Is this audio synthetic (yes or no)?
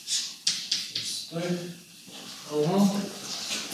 no